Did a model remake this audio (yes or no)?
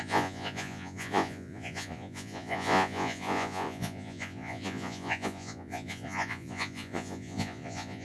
yes